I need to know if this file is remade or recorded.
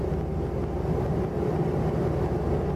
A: recorded